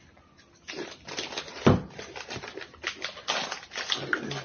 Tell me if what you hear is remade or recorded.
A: recorded